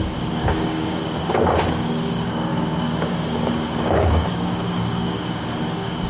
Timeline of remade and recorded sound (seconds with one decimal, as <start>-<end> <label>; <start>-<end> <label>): 0.0-1.0 remade; 1.0-1.7 recorded; 1.7-6.1 remade